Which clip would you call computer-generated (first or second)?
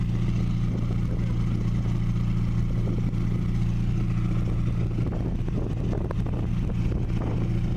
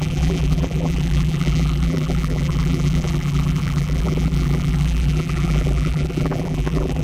second